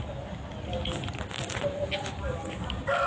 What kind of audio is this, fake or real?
real